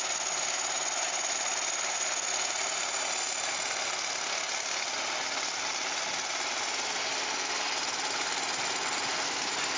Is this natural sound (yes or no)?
yes